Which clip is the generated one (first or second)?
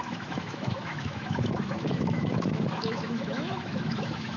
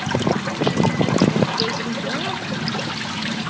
first